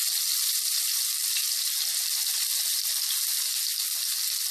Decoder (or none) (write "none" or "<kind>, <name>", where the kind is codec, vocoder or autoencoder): none